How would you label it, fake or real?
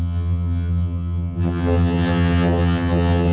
fake